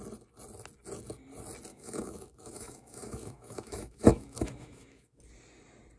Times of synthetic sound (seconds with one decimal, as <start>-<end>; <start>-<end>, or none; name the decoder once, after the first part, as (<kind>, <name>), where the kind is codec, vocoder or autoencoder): 1.7-5.2 (autoencoder, DAC-VAE)